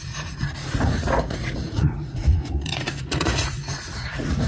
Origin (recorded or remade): remade